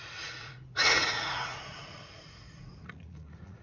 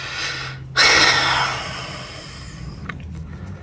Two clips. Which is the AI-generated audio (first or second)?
first